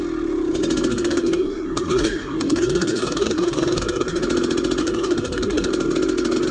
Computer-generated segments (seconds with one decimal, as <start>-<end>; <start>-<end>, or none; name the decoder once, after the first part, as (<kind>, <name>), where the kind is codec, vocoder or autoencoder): 0.9-4.2 (codec, SNAC); 4.8-5.7